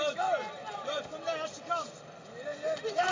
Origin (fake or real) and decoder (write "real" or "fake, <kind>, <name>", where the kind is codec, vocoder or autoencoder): real